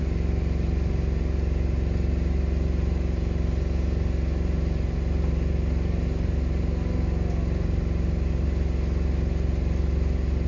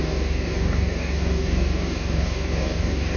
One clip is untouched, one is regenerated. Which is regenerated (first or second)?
second